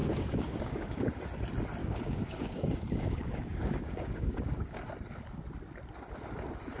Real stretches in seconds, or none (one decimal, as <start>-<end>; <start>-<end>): 1.0-1.8; 4.8-6.8

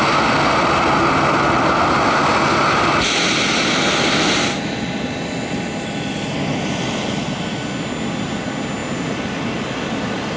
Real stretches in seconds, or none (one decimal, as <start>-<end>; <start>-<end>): 0.0-10.4

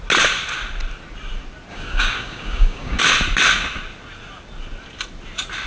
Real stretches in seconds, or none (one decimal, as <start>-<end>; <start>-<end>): 0.0-1.7; 3.0-5.7

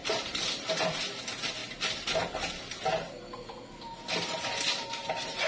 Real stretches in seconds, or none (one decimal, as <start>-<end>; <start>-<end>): 0.0-5.5

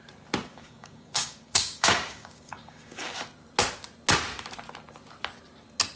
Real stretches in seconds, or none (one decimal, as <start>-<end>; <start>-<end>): 0.0-0.5; 3.2-6.0

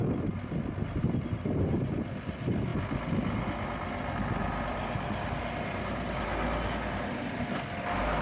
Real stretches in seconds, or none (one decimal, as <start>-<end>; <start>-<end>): 0.0-8.2